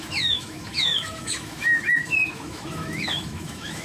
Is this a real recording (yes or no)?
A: no